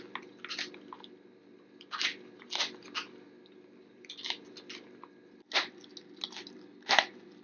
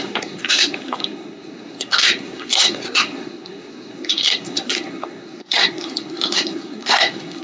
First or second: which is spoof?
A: second